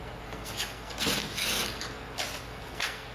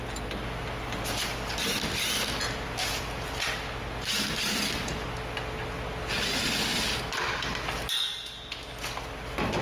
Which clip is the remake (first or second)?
first